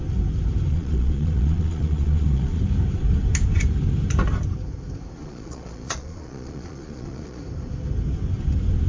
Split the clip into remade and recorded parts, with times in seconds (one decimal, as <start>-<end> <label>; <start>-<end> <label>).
0.0-0.7 recorded; 0.7-2.6 remade; 2.6-5.2 recorded; 5.2-7.4 remade; 7.4-8.9 recorded